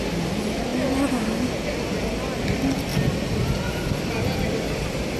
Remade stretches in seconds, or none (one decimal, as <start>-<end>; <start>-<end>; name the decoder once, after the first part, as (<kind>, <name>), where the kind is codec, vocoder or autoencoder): none